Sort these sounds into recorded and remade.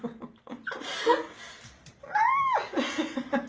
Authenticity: recorded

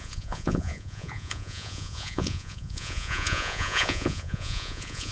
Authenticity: remade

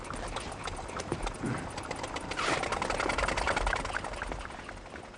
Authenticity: recorded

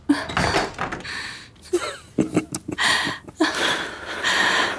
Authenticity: recorded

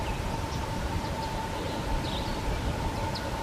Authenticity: recorded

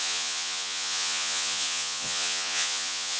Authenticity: remade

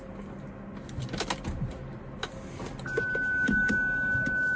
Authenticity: recorded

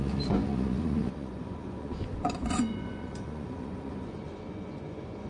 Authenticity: remade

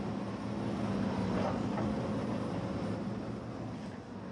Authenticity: recorded